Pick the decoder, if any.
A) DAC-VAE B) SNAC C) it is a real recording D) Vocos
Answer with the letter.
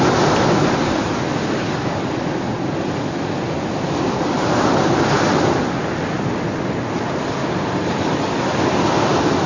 C